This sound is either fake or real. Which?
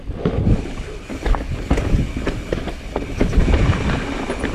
fake